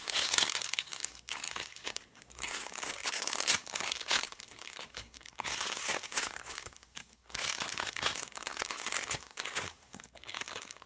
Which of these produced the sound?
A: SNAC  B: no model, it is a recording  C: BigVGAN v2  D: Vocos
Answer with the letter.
A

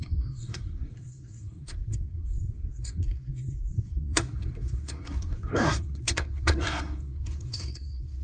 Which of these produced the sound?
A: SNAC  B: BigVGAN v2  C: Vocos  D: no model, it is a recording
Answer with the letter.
A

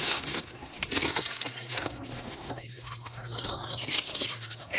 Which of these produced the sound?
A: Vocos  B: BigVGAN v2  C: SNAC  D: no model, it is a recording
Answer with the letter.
C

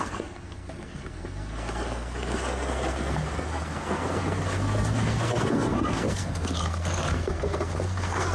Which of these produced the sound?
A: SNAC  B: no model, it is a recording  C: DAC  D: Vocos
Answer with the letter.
A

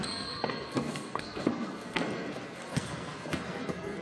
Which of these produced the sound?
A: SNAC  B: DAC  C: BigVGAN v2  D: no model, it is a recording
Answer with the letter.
A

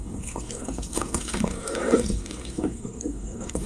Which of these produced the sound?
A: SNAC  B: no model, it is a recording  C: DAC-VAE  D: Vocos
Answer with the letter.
A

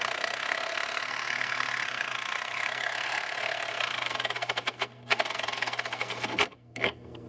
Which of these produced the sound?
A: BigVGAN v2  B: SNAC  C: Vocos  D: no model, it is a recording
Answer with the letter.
B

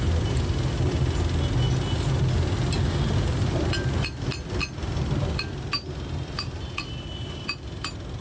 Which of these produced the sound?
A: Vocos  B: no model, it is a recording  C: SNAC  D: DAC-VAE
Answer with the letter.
B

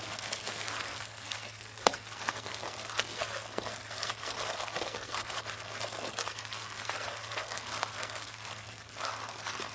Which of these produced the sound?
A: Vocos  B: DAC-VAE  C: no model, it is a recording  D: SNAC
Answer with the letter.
D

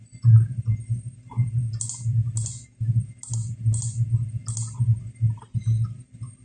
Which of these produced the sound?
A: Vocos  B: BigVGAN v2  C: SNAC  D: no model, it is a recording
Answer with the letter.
D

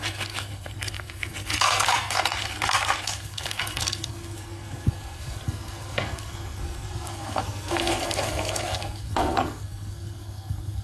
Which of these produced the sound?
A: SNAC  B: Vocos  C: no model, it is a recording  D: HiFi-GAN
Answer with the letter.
A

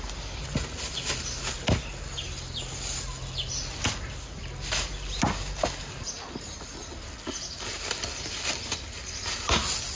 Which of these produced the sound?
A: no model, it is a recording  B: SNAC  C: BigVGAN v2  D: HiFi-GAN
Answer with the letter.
A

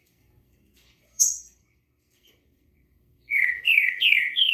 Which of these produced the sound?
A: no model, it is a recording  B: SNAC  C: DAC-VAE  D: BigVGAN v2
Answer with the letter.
B